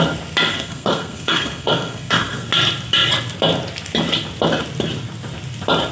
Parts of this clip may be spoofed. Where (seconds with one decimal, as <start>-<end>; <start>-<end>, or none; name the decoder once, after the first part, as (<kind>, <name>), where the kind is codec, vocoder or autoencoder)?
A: 0.5-2.5 (codec, SNAC)